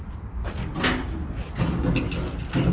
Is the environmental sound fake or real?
real